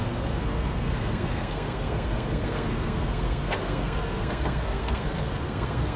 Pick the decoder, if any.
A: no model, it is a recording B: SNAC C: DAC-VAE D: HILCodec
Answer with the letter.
B